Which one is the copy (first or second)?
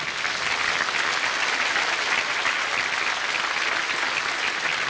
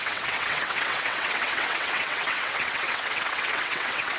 second